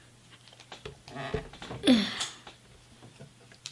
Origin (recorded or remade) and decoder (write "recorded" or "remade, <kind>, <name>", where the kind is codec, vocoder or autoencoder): recorded